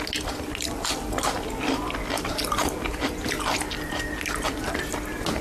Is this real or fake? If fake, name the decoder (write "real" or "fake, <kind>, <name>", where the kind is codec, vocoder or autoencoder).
real